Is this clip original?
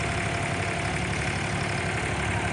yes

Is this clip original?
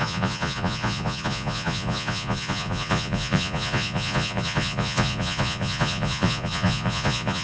no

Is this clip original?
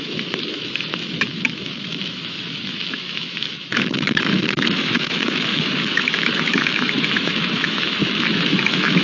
no